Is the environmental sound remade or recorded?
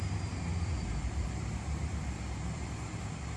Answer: remade